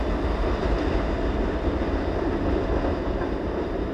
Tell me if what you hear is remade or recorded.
recorded